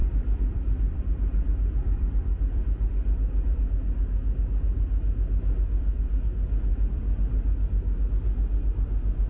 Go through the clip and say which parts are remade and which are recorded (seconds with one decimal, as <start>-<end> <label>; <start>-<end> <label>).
0.0-3.7 remade; 3.7-6.7 recorded; 6.7-8.1 remade; 8.1-9.3 recorded